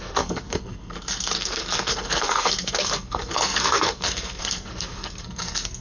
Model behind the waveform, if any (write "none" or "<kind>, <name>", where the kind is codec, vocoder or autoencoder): codec, SNAC